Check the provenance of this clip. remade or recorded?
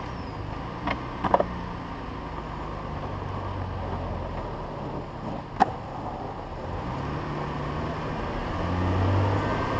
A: recorded